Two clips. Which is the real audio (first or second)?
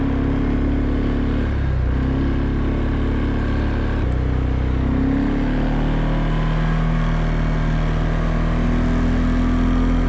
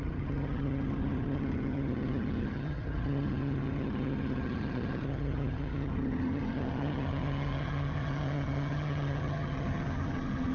first